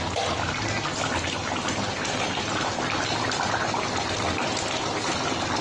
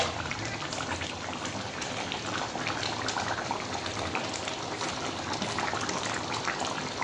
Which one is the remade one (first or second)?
second